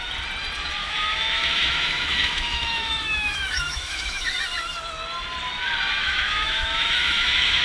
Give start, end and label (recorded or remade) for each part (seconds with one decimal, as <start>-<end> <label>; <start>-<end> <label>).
0.0-0.8 recorded; 0.8-4.4 remade; 4.4-6.0 recorded; 6.0-7.6 remade